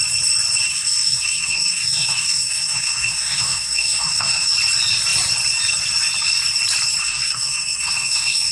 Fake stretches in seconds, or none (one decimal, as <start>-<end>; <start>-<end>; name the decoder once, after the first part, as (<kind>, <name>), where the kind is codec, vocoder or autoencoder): 0.7-4.5 (codec, SNAC); 7.0-8.5